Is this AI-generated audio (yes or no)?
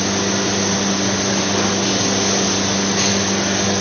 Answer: no